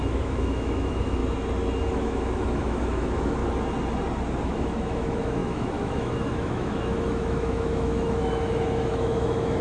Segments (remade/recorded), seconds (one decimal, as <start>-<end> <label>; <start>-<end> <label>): 0.0-1.2 remade; 1.2-1.9 recorded; 1.9-3.4 remade; 3.4-4.4 recorded; 4.4-9.6 remade

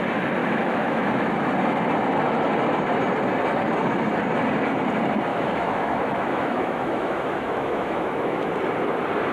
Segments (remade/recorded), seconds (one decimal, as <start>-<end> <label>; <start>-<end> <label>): 0.0-0.4 recorded; 0.4-1.3 remade; 1.3-5.3 recorded; 5.3-8.5 remade; 8.5-9.3 recorded

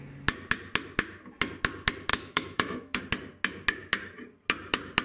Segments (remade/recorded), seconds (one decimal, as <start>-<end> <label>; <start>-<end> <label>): 0.0-2.1 recorded; 2.1-3.0 remade; 3.0-5.0 recorded